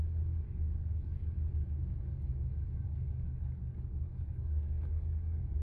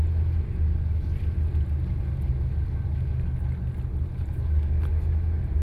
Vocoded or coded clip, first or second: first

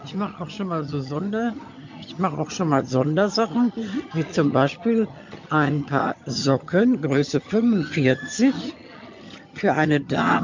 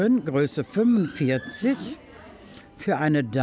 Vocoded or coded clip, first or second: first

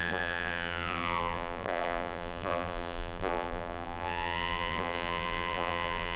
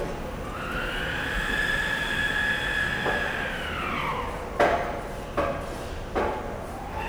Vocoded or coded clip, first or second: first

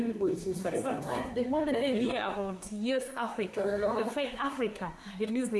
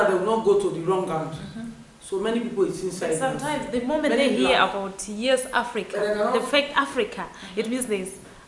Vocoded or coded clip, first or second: first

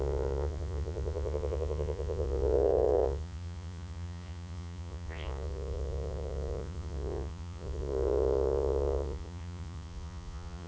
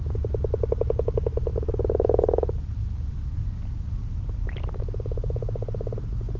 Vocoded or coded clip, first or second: first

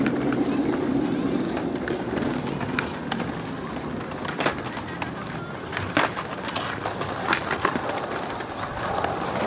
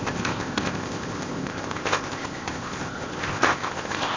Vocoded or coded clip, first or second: second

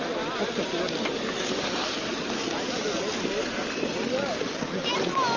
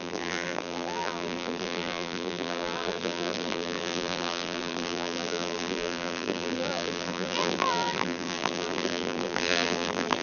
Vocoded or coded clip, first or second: second